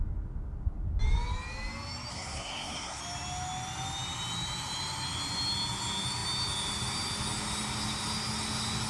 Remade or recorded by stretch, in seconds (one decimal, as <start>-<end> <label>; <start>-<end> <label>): 0.0-2.1 recorded; 2.1-3.0 remade; 3.0-8.9 recorded